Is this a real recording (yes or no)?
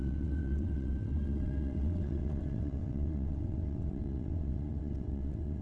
no